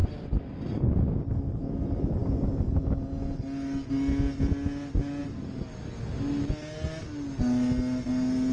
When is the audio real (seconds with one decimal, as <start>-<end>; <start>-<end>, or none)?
0.0-8.5